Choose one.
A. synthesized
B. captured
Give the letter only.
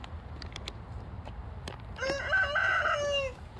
B